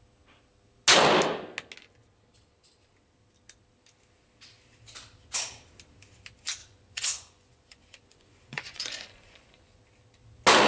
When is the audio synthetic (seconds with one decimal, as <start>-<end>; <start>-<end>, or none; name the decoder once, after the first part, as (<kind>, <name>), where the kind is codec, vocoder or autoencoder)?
6.6-9.8 (vocoder, Vocos)